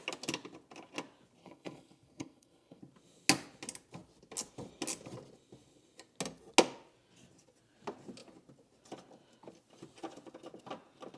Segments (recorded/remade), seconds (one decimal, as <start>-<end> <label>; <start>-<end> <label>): 0.0-1.4 recorded; 1.4-2.8 remade; 2.8-11.2 recorded